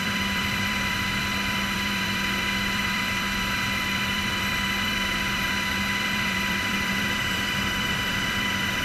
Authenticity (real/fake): fake